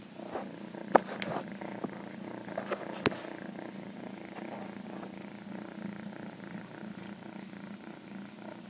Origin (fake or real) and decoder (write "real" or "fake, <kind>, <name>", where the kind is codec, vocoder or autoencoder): real